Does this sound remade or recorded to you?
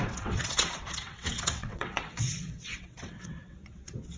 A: remade